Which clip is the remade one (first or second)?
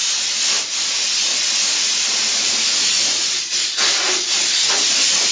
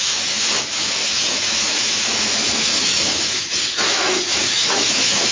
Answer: second